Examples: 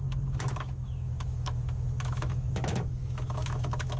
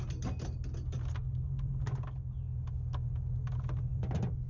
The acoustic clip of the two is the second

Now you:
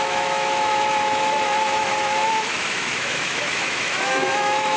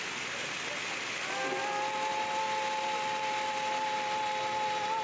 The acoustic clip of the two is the second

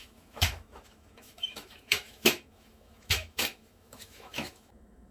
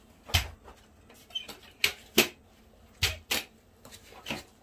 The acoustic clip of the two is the second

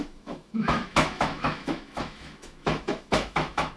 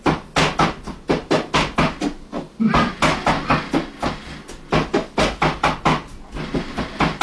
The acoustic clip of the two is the second